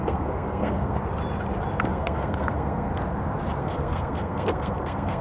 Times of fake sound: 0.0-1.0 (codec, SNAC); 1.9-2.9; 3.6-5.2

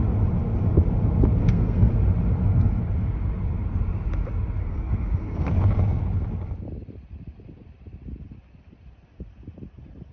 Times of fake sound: 1.4-1.9 (codec, SNAC); 4.6-5.5